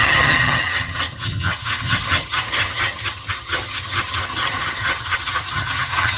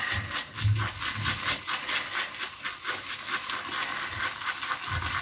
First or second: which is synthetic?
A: first